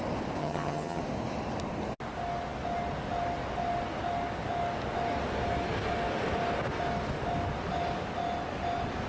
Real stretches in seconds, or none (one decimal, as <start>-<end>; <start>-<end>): 0.0-0.4; 1.0-9.1